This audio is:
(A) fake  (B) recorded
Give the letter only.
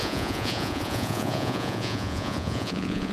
A